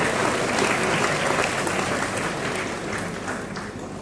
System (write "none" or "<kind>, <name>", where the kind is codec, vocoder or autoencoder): none